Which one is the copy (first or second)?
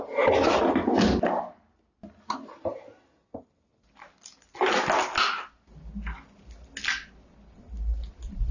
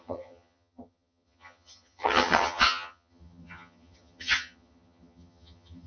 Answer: second